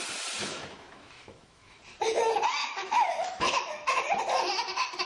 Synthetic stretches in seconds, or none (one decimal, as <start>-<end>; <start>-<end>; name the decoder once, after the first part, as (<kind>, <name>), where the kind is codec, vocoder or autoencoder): 0.4-1.8 (autoencoder, DAC-VAE); 2.6-4.0